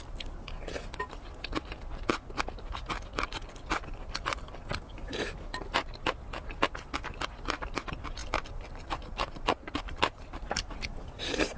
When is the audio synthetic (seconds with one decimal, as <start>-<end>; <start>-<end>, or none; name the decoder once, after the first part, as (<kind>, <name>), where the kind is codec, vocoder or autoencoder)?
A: 8.2-11.6 (vocoder, BigVGAN v2)